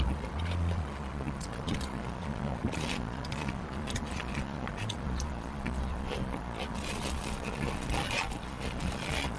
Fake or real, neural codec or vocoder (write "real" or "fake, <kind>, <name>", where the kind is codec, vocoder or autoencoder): fake, vocoder, Vocos